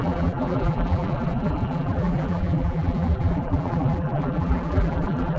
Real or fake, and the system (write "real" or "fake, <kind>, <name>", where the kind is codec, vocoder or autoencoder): fake, vocoder, BigVGAN v2